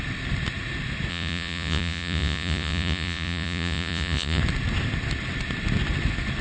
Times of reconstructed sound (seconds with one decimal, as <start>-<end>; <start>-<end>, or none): 1.1-4.4